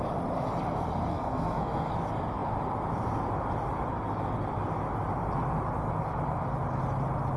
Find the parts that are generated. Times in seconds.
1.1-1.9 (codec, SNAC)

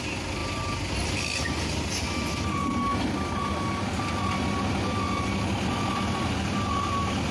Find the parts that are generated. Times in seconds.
none

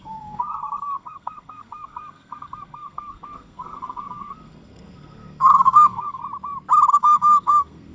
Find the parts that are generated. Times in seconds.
0.0-6.2 (codec, SNAC); 6.9-7.9

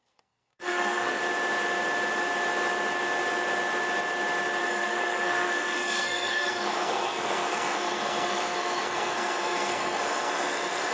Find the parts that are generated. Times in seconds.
0.0-1.2 (codec, SNAC); 4.6-10.9

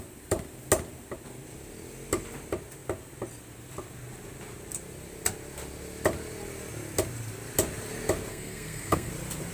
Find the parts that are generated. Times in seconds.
8.3-9.1 (codec, SNAC)

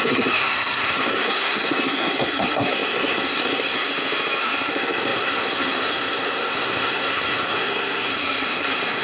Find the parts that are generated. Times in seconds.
0.0-3.9 (codec, SNAC); 4.4-9.0